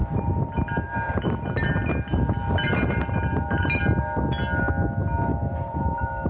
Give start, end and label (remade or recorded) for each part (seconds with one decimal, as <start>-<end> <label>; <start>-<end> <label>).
0.0-3.8 remade; 3.8-5.3 recorded; 5.3-6.3 remade